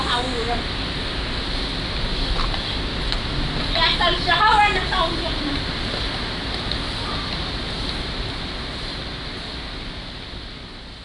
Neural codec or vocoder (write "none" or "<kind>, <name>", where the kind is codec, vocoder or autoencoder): none